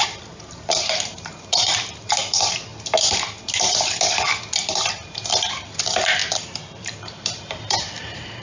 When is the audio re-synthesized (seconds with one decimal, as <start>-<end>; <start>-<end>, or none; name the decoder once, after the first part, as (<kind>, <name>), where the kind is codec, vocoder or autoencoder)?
0.0-2.7 (vocoder, BigVGAN v2); 4.9-8.4